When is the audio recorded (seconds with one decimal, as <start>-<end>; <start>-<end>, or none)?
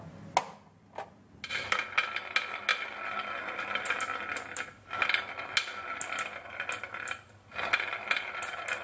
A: 0.0-8.8